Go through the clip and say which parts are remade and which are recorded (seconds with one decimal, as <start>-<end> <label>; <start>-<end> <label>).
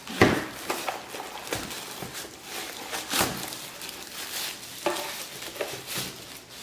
0.0-6.6 recorded